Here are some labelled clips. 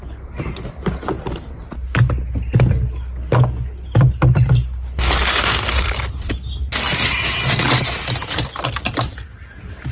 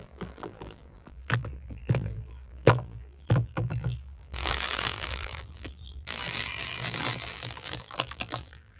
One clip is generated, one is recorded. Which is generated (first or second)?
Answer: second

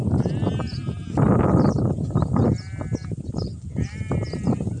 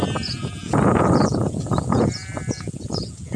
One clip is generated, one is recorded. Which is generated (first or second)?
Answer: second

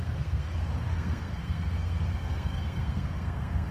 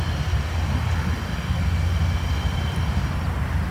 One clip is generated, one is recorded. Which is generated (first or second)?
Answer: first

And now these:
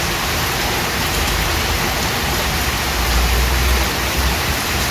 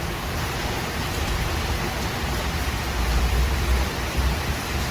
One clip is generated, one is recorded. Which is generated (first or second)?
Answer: second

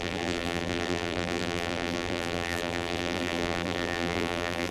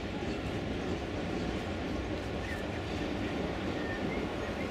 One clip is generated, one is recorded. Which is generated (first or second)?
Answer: first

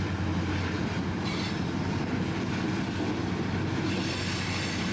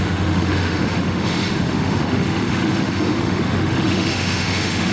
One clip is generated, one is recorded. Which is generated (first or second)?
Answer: second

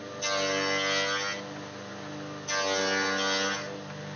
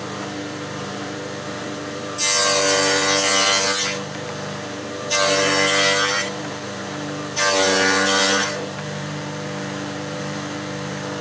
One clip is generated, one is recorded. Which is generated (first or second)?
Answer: second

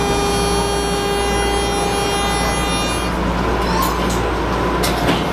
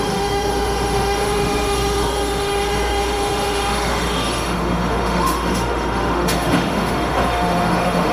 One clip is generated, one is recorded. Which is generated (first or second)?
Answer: second